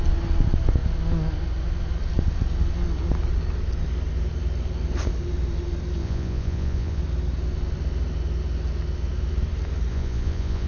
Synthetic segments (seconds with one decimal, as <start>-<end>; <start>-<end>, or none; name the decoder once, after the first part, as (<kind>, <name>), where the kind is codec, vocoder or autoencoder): 6.0-7.0 (vocoder, Vocos); 9.9-10.7